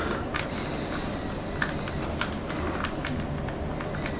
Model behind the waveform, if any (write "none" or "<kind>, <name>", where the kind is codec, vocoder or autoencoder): none